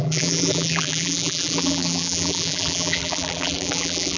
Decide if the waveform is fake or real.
fake